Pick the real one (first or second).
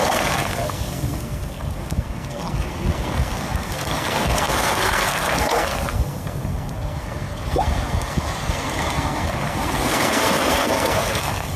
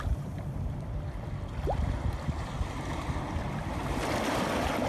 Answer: second